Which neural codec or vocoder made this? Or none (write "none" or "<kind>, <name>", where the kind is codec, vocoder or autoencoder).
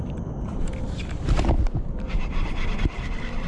vocoder, BigVGAN v2